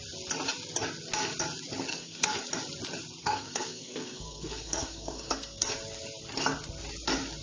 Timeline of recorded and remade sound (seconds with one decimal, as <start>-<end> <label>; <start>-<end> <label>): 0.0-1.9 recorded; 1.9-2.4 remade; 2.4-3.2 recorded; 3.2-5.7 remade; 5.7-7.4 recorded